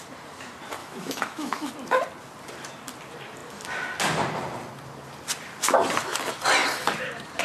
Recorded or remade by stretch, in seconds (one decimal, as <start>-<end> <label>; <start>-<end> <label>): 0.0-0.8 recorded; 0.8-1.7 remade; 1.7-7.4 recorded